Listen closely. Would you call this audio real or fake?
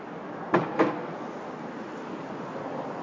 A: real